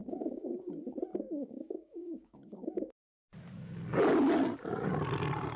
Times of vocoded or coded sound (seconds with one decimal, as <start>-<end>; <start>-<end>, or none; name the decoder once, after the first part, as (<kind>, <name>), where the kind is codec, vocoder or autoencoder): 0.0-0.6 (codec, DAC); 1.1-2.9